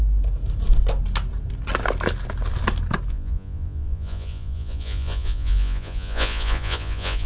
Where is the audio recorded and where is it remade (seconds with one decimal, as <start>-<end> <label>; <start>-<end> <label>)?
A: 0.0-3.1 recorded; 3.1-7.3 remade